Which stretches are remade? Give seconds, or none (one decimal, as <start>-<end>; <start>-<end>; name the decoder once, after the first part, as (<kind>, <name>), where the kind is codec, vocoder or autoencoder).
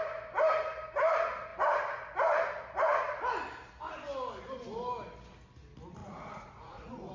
6.0-7.1 (vocoder, Vocos)